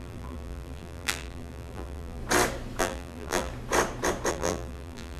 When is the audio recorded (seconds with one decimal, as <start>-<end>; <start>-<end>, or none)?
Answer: 2.2-2.8; 3.5-4.3